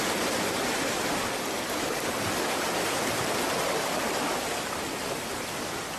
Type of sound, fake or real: real